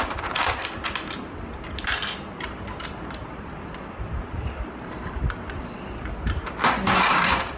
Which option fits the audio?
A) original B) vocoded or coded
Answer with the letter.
B